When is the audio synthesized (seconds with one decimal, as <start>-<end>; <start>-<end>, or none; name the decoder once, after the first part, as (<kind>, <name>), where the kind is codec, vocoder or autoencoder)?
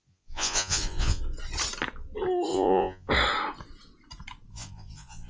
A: 0.0-1.2 (vocoder, Vocos); 2.5-3.1; 4.5-5.3